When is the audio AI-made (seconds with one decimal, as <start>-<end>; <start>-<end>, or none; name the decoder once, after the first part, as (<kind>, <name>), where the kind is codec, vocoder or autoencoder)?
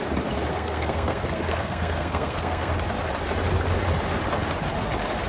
0.5-2.7 (codec, SNAC)